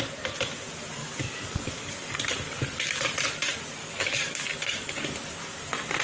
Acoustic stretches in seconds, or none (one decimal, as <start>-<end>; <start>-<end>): 0.0-1.0; 1.9-3.8; 5.3-6.0